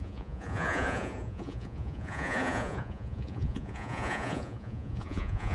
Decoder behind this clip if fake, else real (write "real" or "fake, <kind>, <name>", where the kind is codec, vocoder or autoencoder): fake, vocoder, Vocos